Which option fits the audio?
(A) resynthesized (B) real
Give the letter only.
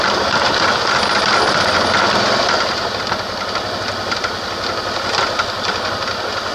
B